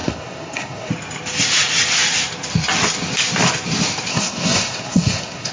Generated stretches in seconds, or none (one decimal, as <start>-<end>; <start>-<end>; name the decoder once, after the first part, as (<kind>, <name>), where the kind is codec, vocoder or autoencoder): 0.0-0.9 (codec, SNAC); 4.1-5.5